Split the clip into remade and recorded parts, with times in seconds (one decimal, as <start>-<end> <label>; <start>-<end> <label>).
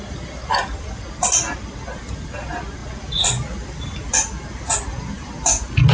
0.0-5.9 recorded